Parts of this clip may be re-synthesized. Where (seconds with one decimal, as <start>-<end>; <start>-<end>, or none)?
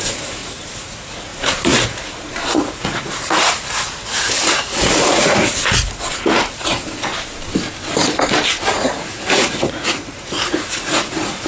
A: 0.0-7.1; 8.7-11.5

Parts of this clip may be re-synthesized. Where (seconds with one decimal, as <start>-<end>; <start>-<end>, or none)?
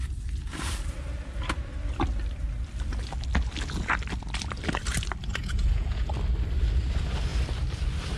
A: 5.4-6.1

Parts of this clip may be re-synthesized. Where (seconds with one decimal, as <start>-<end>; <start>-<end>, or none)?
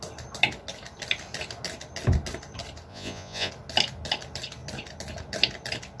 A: 2.9-3.5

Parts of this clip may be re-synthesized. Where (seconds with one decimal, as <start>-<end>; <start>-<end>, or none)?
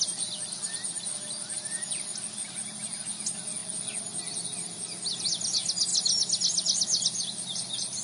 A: none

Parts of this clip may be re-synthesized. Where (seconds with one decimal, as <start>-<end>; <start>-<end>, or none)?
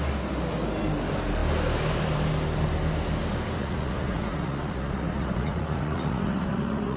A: 3.6-7.0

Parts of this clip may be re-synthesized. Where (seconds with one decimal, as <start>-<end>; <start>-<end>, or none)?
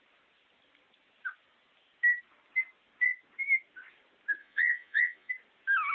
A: 4.4-5.3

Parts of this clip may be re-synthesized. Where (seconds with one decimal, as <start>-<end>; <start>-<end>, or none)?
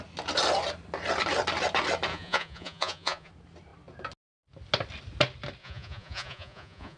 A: 2.1-3.3; 5.6-7.0